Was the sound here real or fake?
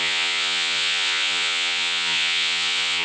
fake